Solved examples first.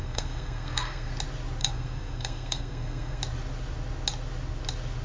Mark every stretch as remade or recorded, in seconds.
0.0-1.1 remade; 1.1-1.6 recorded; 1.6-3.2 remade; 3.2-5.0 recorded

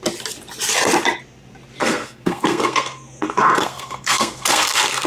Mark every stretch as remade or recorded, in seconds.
0.0-1.8 recorded; 1.8-5.1 remade

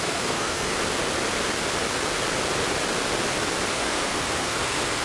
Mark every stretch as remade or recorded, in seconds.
0.0-0.7 remade; 0.7-3.7 recorded; 3.7-5.0 remade

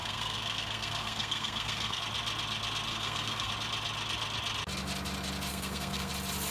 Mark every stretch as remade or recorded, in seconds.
0.0-2.0 remade; 2.0-2.9 recorded; 2.9-3.5 remade; 3.5-5.5 recorded; 5.5-6.1 remade; 6.1-6.5 recorded

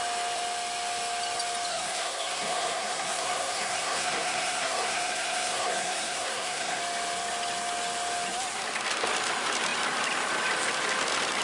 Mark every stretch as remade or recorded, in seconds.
0.0-1.7 recorded; 1.7-6.8 remade; 6.8-11.4 recorded